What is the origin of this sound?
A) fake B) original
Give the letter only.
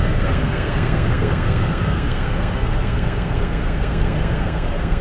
A